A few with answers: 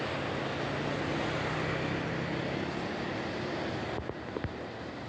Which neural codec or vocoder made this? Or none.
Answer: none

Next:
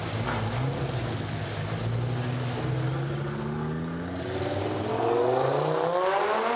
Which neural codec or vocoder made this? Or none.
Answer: none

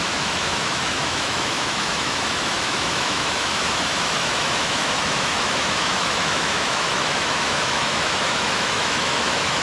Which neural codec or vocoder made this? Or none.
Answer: autoencoder, DAC-VAE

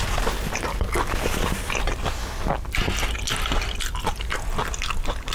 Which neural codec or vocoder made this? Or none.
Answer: none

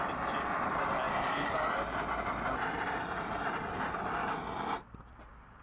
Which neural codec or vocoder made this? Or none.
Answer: none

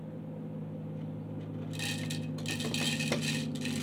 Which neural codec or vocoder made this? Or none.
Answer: none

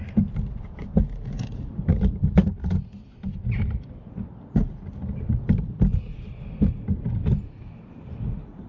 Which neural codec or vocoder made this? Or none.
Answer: none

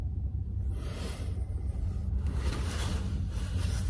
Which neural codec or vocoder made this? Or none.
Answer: none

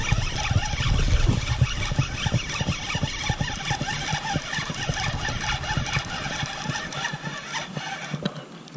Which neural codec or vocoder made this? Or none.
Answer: none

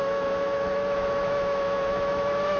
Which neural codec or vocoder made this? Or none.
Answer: autoencoder, DAC-VAE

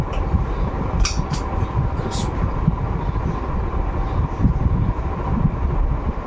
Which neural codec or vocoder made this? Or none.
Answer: none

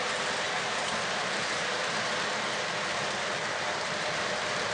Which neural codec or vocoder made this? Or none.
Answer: none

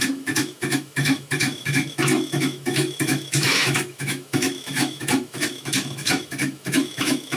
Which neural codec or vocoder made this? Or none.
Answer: autoencoder, DAC-VAE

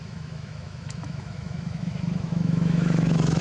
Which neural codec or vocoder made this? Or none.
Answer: autoencoder, DAC-VAE